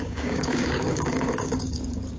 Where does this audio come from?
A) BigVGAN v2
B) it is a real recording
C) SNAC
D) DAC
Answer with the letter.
D